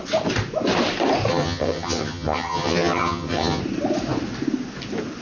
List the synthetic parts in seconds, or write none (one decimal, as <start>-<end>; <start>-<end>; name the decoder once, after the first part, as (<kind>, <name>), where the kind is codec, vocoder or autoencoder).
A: 1.3-3.6 (vocoder, HiFi-GAN)

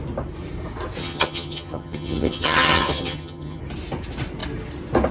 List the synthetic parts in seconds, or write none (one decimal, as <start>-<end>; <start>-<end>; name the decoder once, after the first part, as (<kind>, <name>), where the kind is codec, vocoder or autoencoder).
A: 1.0-3.6 (vocoder, HiFi-GAN)

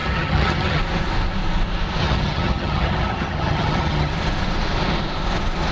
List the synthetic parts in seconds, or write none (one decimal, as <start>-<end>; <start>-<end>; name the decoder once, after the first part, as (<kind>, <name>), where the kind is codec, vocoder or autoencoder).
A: 0.0-0.8 (vocoder, HiFi-GAN); 2.0-4.1